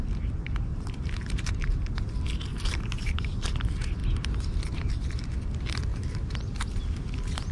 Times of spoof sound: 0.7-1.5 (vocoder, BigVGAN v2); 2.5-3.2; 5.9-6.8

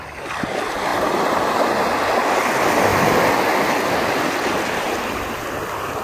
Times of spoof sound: none

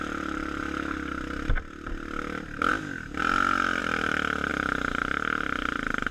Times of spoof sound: none

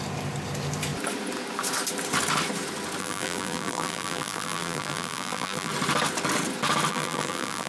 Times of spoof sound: 3.0-5.7 (vocoder, BigVGAN v2); 6.9-7.7

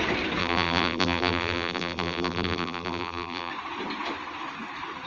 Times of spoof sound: 0.4-3.5 (vocoder, BigVGAN v2)

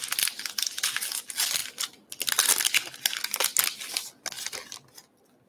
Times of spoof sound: none